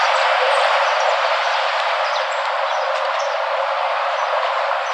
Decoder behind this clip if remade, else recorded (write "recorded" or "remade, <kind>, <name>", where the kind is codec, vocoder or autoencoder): remade, vocoder, BigVGAN v2